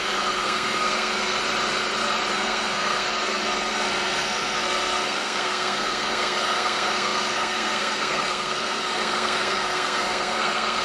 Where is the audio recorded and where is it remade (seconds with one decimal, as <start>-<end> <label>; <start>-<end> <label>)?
0.0-1.4 remade; 1.4-2.3 recorded; 2.3-10.8 remade